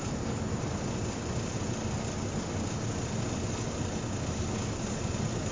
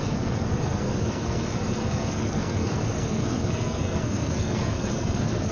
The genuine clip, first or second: first